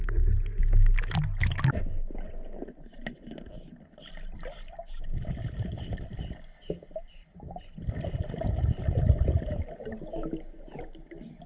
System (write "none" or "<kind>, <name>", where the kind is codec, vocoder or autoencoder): none